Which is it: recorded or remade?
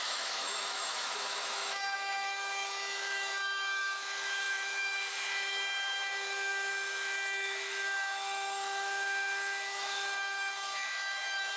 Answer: remade